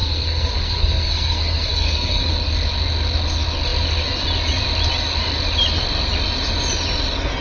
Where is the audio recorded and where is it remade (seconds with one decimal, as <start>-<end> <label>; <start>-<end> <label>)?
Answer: 0.0-2.3 remade; 2.3-7.4 recorded